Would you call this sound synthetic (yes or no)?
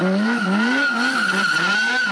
no